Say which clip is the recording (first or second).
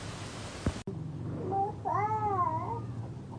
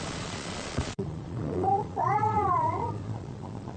first